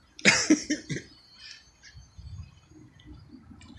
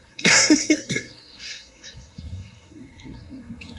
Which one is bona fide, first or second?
first